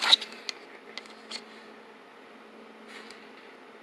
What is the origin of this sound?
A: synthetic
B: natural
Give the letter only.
B